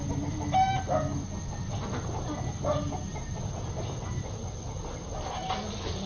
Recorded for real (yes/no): yes